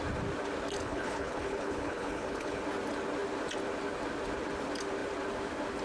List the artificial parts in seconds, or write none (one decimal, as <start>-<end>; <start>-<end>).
0.8-2.6